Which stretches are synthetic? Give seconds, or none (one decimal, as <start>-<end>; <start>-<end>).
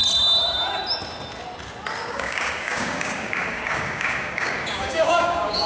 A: 2.0-5.7